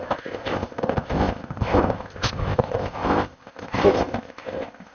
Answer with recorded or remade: remade